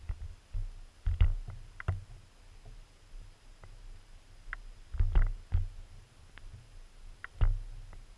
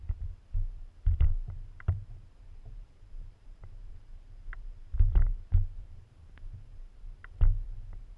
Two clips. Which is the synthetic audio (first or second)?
second